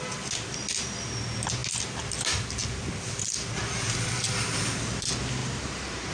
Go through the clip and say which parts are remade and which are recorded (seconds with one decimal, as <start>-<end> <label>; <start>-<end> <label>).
0.0-5.4 recorded; 5.4-6.1 remade

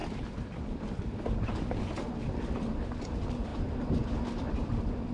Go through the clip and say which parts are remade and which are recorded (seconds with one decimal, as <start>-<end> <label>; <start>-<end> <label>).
0.0-1.8 remade; 1.8-3.5 recorded; 3.5-4.2 remade; 4.2-5.1 recorded